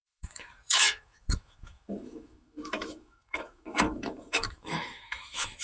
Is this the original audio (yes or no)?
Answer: no